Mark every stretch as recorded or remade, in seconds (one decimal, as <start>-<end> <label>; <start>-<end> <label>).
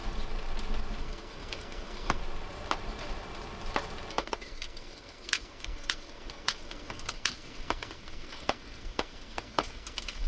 0.0-1.0 recorded; 1.0-2.2 remade; 2.2-4.1 recorded; 4.1-10.3 remade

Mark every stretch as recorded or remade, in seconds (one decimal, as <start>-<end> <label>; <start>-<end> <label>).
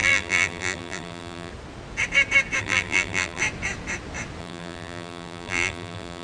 0.0-1.5 remade; 1.5-2.6 recorded; 2.6-3.4 remade; 3.4-4.4 recorded; 4.4-6.2 remade